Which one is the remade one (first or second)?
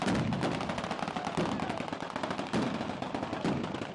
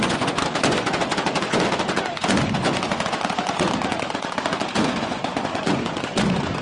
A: second